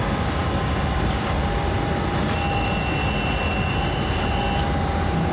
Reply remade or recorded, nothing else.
recorded